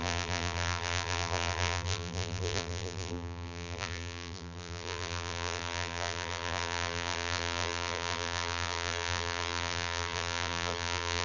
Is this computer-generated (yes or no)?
yes